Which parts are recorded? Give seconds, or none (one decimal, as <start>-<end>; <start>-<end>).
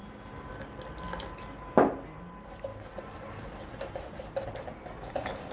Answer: 0.0-5.5